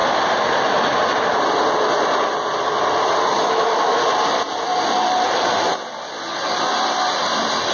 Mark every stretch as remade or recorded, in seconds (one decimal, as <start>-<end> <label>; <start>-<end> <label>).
0.0-3.4 recorded; 3.4-4.0 remade; 4.0-7.7 recorded